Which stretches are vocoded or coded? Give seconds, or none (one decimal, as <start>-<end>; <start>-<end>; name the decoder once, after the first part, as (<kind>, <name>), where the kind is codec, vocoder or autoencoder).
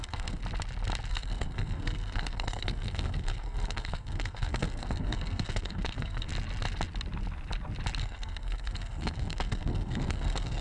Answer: 0.0-0.4 (codec, SNAC); 1.1-6.3; 8.0-10.6